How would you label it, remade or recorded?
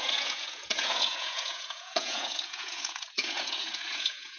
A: remade